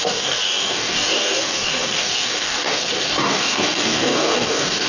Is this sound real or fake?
fake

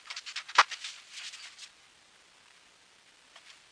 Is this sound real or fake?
real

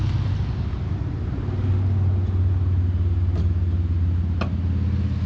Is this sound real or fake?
real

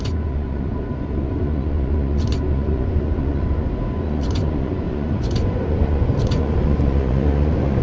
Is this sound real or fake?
fake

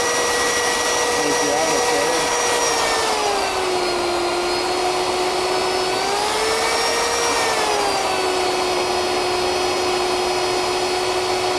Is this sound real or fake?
real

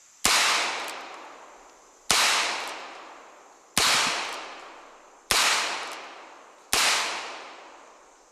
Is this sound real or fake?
real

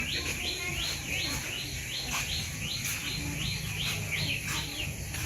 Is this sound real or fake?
real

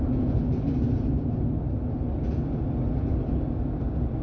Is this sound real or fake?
real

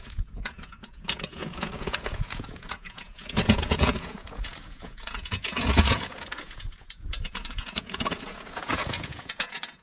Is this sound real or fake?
fake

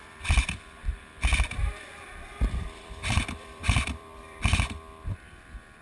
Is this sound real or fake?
fake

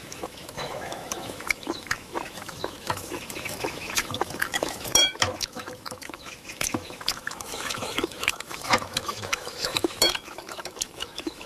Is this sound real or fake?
fake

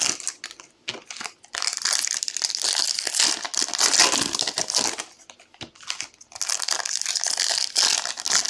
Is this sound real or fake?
real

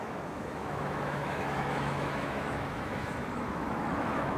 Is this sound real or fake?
fake